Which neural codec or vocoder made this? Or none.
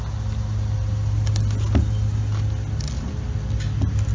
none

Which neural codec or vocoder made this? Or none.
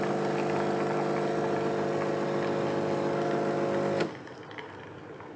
none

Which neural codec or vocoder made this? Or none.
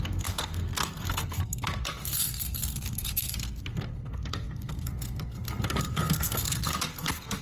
codec, SNAC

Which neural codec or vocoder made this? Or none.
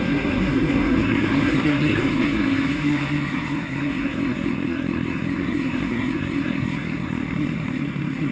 codec, SNAC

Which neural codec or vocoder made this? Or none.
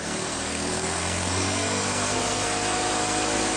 codec, SNAC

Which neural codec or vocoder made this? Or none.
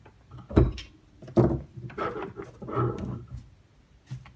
none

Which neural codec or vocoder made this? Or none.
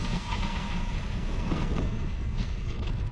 codec, SNAC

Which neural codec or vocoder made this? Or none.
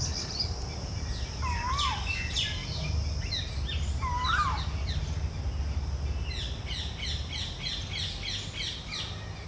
none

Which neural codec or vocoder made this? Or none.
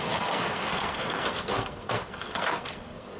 codec, SNAC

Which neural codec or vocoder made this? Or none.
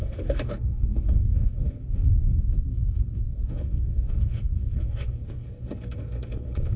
codec, SNAC